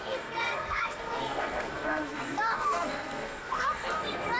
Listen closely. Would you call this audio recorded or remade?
remade